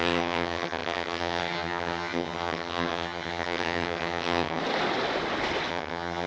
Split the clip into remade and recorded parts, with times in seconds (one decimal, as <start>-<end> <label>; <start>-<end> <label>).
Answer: 0.0-4.6 remade; 4.6-5.7 recorded; 5.7-6.3 remade